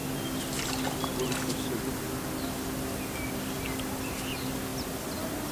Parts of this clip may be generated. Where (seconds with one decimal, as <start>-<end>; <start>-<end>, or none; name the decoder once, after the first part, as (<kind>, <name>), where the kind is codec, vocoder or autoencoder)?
none